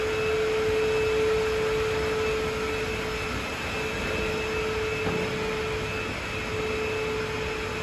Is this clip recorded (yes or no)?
yes